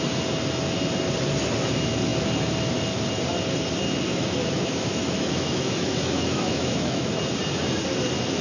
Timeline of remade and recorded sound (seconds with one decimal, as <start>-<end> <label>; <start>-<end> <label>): 0.0-4.1 recorded; 4.1-7.2 remade; 7.2-8.4 recorded